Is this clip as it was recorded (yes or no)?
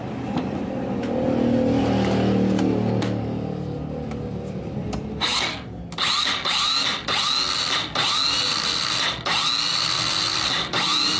yes